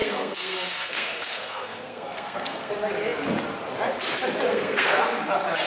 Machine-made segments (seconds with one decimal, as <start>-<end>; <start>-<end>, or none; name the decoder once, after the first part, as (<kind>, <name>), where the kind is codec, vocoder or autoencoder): 0.0-2.7 (codec, SNAC); 4.5-5.0